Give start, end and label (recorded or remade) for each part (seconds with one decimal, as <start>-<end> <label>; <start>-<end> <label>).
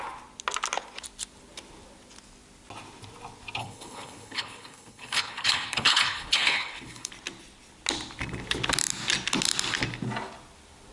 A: 0.0-3.6 recorded; 3.6-7.1 remade; 7.1-10.9 recorded